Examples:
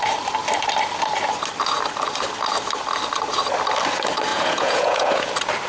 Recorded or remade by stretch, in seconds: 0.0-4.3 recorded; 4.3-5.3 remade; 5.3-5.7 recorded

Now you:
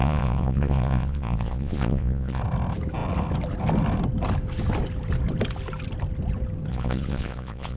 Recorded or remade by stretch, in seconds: 0.0-2.4 remade; 2.4-6.7 recorded; 6.7-7.8 remade

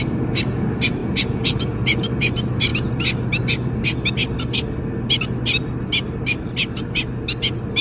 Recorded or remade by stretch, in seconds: 0.0-1.0 recorded; 1.0-2.0 remade; 2.0-7.8 recorded

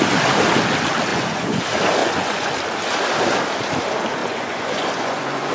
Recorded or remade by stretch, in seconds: 0.0-1.1 recorded; 1.1-1.6 remade; 1.6-2.0 recorded; 2.0-2.5 remade; 2.5-4.2 recorded; 4.2-5.5 remade

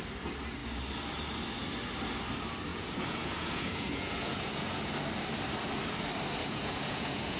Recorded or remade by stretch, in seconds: 0.0-2.7 recorded; 2.7-4.9 remade; 4.9-6.4 recorded; 6.4-7.4 remade